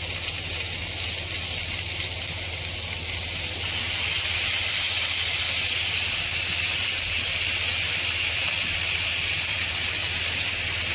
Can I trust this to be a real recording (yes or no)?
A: yes